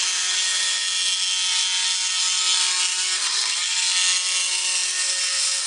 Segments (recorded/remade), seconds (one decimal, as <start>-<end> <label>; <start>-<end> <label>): 0.0-5.7 recorded